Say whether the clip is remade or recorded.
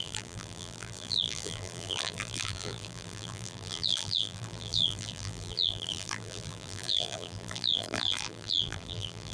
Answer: remade